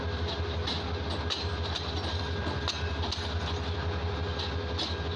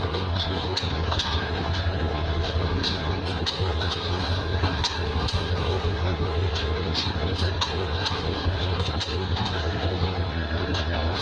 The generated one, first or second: second